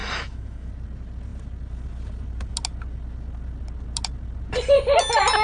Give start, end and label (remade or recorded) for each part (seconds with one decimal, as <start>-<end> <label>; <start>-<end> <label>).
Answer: 0.0-0.7 remade; 0.7-5.4 recorded